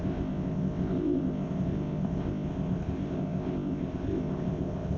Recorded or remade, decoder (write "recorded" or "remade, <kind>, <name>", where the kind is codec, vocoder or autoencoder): remade, codec, ZipCodec